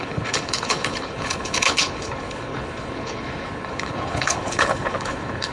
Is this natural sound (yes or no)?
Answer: no